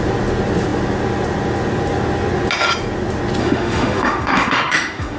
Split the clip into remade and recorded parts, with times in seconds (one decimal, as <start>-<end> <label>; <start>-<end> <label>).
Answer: 0.0-3.4 recorded; 3.4-5.2 remade